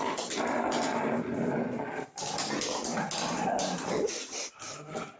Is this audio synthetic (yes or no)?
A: no